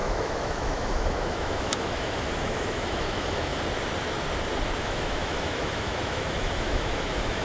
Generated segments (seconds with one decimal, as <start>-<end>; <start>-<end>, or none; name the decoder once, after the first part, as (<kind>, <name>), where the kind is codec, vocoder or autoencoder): 0.0-3.5 (autoencoder, DAC-VAE); 4.8-7.4